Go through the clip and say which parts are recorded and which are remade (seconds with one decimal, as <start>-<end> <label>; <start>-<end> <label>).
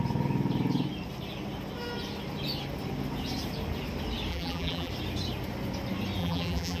0.0-4.3 recorded; 4.3-4.9 remade; 4.9-6.2 recorded; 6.2-6.8 remade